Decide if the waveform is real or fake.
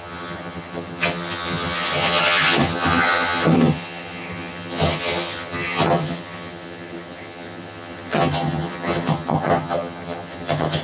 fake